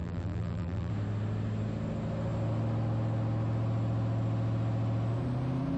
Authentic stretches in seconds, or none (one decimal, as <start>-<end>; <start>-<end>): 0.9-5.8